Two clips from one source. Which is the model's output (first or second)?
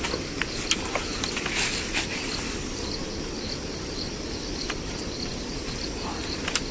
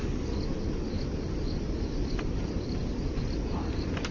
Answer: first